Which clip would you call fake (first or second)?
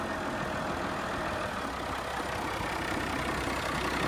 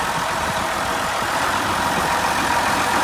second